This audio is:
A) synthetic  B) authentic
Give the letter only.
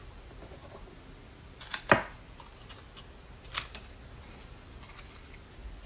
B